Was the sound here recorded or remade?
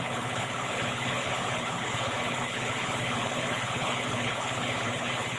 remade